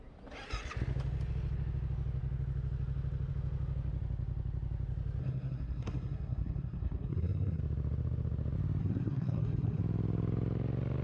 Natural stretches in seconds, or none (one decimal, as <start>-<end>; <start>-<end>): 0.0-5.2; 7.6-8.8; 9.8-11.0